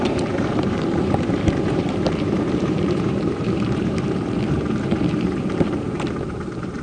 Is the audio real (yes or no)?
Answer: no